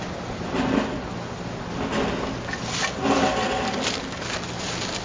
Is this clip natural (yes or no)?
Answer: yes